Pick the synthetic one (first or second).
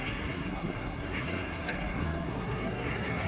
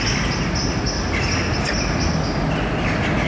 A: first